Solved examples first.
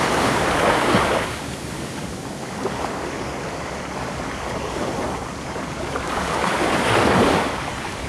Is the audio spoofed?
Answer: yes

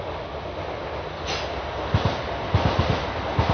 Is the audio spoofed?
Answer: no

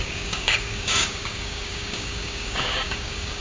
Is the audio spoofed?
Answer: yes